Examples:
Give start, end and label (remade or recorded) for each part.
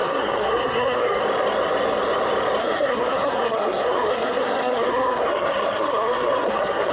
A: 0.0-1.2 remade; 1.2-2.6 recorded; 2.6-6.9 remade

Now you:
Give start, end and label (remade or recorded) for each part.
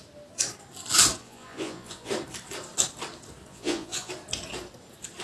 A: 0.0-1.2 recorded; 1.2-2.1 remade; 2.1-3.5 recorded; 3.5-4.1 remade; 4.1-5.2 recorded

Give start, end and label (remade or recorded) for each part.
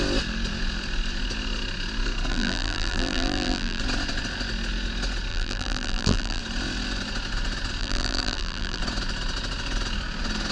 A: 0.0-2.3 recorded; 2.3-3.8 remade; 3.8-5.3 recorded; 5.3-6.4 remade; 6.4-7.8 recorded; 7.8-8.8 remade; 8.8-10.5 recorded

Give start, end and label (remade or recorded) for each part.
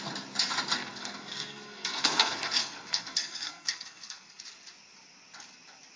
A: 0.0-0.8 recorded; 0.8-4.4 remade; 4.4-6.0 recorded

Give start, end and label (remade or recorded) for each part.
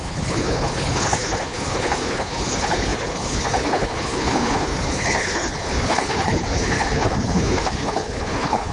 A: 0.0-8.7 remade